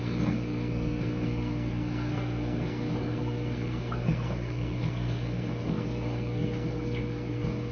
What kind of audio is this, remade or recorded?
remade